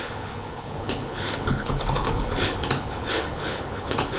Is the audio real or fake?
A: fake